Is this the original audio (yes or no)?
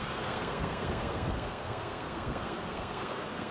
no